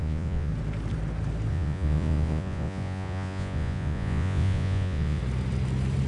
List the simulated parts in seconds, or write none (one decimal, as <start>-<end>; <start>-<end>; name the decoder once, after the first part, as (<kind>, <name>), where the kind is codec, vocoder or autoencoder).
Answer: 0.0-0.5 (vocoder, Vocos); 1.5-5.2